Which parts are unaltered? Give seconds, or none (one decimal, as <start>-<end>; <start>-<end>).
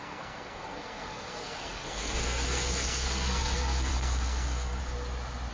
4.8-5.5